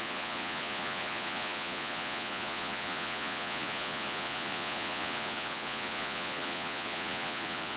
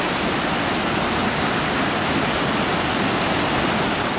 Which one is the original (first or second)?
second